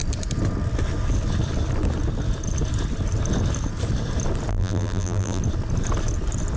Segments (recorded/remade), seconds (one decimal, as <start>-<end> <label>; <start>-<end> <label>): 0.0-4.5 recorded; 4.5-5.4 remade; 5.4-6.6 recorded